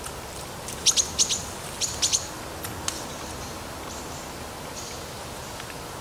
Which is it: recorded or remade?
recorded